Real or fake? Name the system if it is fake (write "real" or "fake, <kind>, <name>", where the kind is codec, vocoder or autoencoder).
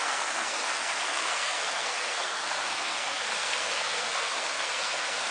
fake, codec, SNAC